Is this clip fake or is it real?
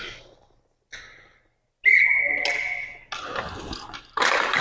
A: real